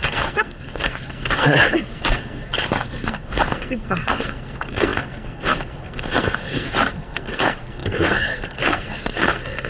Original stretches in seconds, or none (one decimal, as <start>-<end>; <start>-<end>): none